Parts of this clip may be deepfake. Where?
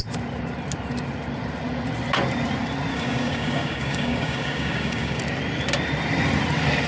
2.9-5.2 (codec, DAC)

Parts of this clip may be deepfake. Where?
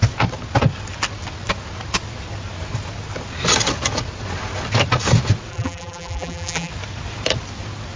5.5-6.7 (vocoder, BigVGAN v2)